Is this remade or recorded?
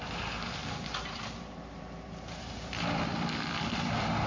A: remade